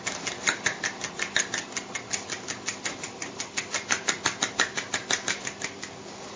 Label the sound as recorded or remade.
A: recorded